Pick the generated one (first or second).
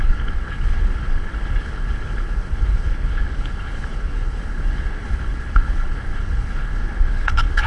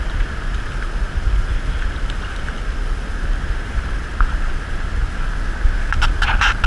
first